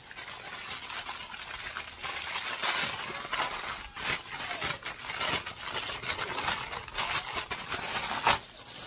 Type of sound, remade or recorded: recorded